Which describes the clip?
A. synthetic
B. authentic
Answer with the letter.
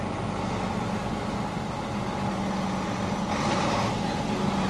B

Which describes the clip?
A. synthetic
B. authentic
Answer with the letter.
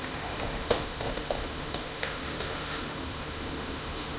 A